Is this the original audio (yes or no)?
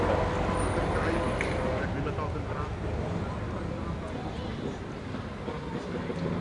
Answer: yes